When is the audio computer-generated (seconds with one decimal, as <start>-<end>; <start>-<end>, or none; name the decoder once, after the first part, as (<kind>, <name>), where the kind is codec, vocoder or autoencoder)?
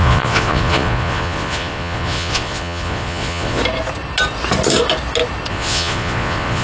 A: 0.0-3.6 (vocoder, Vocos); 5.5-6.6